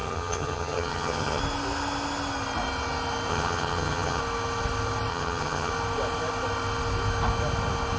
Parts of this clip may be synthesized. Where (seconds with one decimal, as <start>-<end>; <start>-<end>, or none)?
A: 0.0-1.4; 3.3-4.2; 5.1-5.7